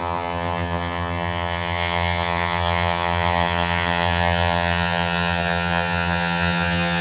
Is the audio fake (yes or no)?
yes